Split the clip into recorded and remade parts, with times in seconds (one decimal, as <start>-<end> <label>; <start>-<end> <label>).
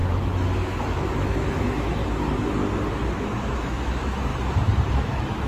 0.0-2.0 remade; 2.0-2.9 recorded; 2.9-4.3 remade; 4.3-4.9 recorded; 4.9-5.5 remade